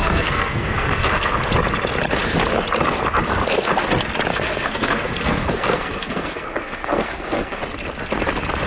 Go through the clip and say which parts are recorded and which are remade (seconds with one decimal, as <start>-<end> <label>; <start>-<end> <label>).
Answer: 0.0-1.3 remade; 1.3-4.3 recorded; 4.3-7.6 remade; 7.6-8.7 recorded